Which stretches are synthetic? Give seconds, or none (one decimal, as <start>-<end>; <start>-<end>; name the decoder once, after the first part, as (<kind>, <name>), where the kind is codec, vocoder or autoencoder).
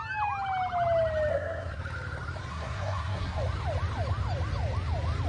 1.3-1.8 (codec, SNAC); 2.5-3.4